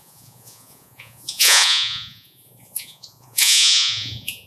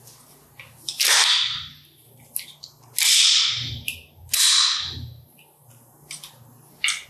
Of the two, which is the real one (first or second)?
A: second